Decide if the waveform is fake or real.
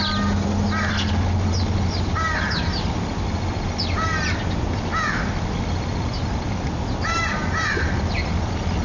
real